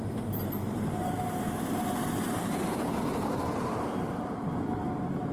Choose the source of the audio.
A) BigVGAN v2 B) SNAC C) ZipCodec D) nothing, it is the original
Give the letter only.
A